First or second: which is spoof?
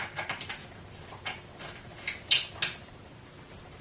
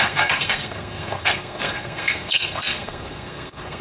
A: second